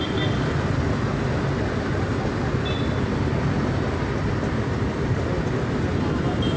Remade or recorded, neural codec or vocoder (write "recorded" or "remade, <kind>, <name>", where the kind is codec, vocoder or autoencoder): recorded